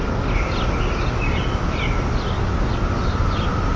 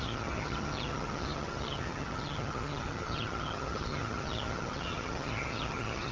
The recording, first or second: first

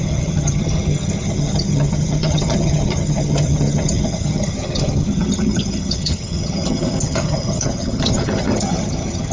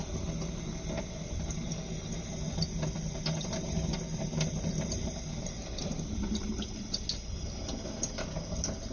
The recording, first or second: second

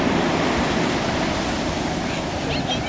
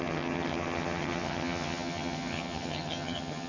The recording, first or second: first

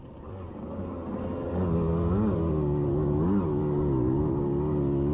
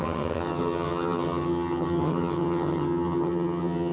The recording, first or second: first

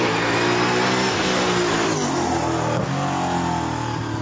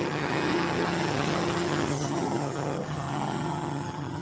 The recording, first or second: first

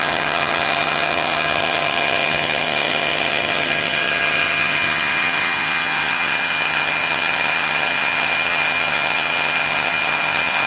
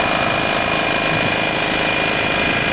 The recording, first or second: second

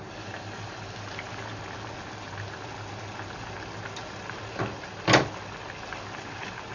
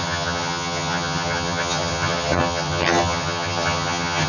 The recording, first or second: first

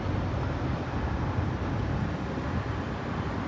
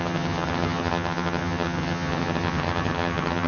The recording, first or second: first